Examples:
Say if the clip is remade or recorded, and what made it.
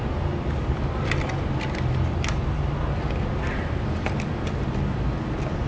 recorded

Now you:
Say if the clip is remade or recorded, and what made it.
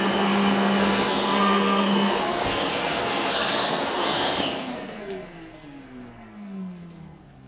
remade, codec, SNAC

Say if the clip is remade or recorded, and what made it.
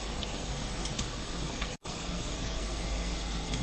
remade, codec, SNAC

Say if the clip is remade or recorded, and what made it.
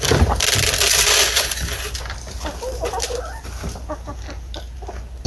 recorded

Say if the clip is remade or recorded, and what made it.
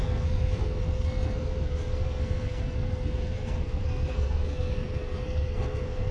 remade, codec, SNAC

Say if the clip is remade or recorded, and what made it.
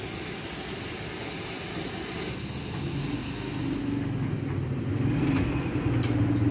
recorded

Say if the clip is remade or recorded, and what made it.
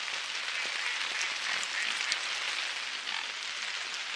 recorded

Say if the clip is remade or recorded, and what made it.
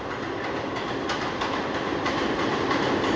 recorded